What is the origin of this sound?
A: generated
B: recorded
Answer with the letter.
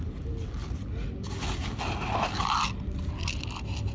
B